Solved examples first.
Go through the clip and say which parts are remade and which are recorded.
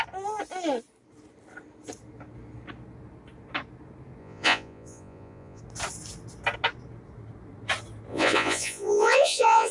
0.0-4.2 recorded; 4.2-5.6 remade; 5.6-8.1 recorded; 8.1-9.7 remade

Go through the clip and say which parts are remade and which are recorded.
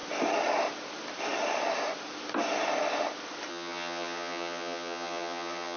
0.0-3.5 recorded; 3.5-5.8 remade